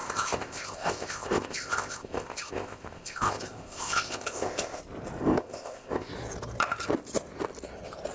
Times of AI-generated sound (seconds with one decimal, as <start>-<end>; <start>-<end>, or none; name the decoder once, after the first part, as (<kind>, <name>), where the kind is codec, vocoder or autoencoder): 0.0-4.8 (codec, ZipCodec); 5.2-6.1